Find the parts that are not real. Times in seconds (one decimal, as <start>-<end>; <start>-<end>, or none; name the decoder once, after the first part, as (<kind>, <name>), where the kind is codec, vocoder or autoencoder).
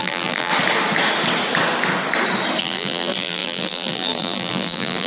0.0-0.5 (vocoder, BigVGAN v2); 2.6-5.1